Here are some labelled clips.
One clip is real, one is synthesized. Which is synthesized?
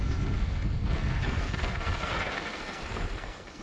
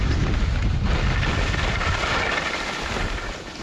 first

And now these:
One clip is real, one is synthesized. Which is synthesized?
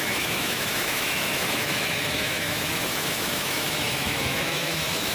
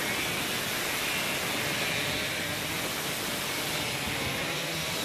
first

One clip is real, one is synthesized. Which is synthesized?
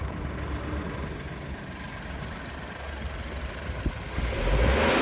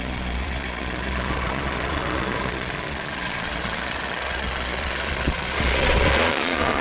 second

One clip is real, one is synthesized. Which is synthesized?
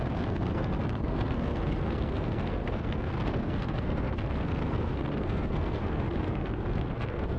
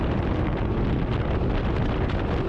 first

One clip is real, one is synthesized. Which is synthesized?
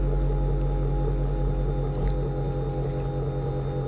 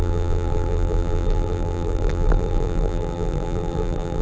second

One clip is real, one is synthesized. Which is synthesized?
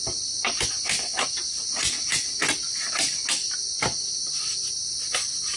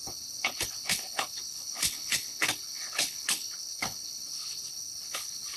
second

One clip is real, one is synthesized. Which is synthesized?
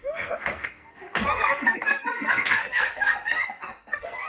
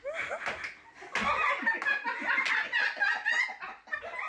first